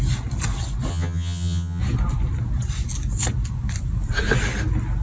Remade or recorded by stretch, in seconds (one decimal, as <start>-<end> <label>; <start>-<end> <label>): 0.0-0.9 recorded; 0.9-1.8 remade; 1.8-5.0 recorded